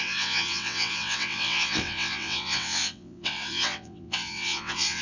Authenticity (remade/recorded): remade